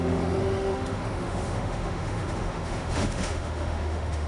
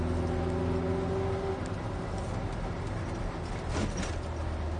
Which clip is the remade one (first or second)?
first